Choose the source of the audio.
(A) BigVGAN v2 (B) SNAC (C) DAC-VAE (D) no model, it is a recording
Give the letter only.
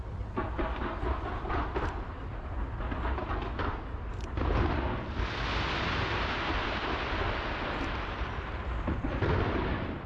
D